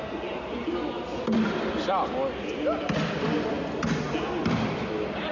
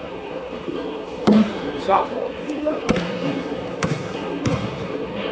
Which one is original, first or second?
first